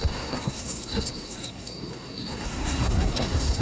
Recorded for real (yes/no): no